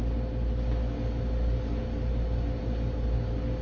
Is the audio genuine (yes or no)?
yes